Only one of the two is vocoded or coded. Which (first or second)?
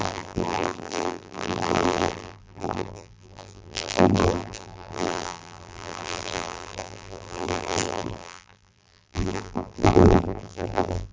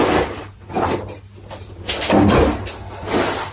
first